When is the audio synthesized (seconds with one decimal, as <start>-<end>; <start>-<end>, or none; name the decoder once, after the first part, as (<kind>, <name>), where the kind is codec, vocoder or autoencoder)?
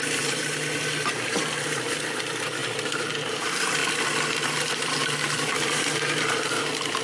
0.0-3.8 (vocoder, BigVGAN v2); 4.7-7.0